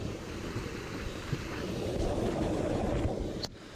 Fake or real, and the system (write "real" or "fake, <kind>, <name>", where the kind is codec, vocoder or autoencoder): real